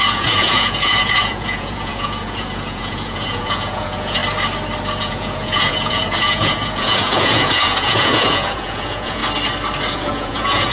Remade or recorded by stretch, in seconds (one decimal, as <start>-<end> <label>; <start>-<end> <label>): 0.0-4.2 remade; 4.2-5.0 recorded; 5.0-9.2 remade; 9.2-9.9 recorded; 9.9-10.7 remade